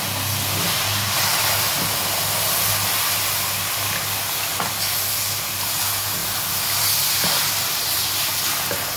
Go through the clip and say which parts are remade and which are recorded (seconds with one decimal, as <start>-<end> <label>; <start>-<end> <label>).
0.0-9.0 recorded